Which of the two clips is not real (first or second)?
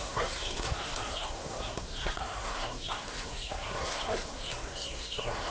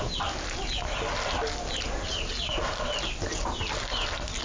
first